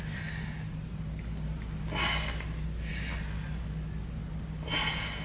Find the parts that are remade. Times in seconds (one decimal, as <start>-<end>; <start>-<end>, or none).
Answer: none